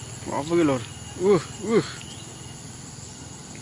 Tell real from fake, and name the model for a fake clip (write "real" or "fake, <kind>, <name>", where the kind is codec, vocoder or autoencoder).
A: real